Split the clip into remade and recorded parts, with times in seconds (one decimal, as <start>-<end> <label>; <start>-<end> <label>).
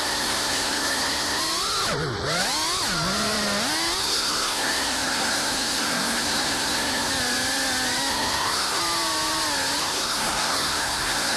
0.0-1.4 remade; 1.4-4.0 recorded; 4.0-7.1 remade; 7.1-8.1 recorded; 8.1-8.8 remade; 8.8-9.8 recorded; 9.8-11.4 remade